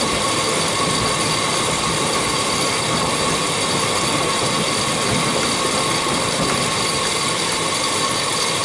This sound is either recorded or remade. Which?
remade